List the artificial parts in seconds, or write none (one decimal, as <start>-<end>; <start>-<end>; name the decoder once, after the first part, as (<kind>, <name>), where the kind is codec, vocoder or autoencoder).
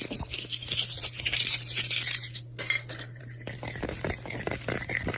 none